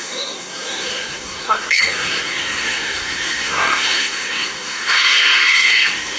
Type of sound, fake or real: fake